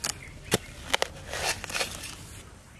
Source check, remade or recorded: recorded